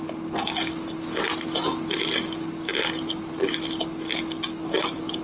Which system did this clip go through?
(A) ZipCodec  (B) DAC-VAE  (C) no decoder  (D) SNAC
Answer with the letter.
C